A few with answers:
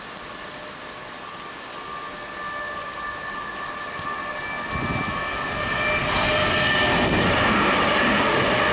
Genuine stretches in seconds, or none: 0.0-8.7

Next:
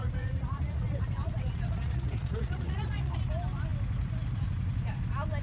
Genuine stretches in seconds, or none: 3.2-5.4

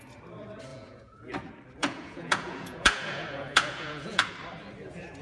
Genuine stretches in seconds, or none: 0.0-0.7; 1.3-1.8; 4.3-5.2

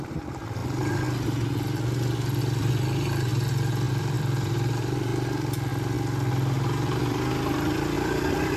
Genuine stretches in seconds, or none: 0.6-2.3; 3.3-3.9; 5.1-7.0

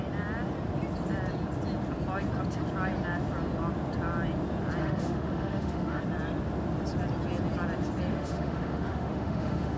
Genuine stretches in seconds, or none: 0.0-4.8; 6.0-8.1